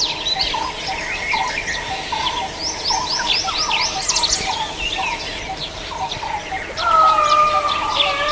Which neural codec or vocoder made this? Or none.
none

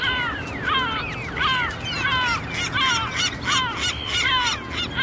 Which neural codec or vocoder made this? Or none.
none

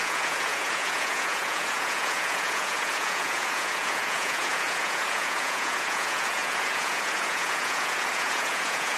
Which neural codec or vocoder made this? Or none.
vocoder, Vocos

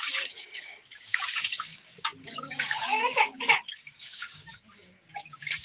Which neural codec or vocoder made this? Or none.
codec, DAC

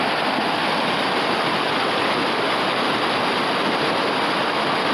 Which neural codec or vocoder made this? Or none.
none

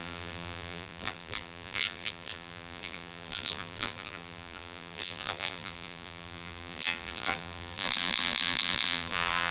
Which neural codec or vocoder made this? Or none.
vocoder, BigVGAN v2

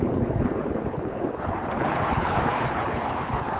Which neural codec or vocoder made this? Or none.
codec, HILCodec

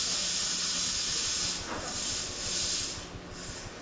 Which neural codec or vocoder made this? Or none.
none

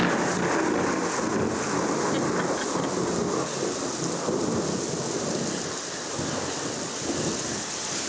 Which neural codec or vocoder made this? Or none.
none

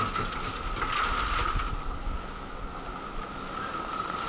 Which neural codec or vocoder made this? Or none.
none